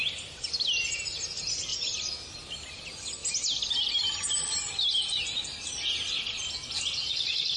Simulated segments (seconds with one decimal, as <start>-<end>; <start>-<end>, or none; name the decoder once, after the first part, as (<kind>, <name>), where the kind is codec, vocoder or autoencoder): none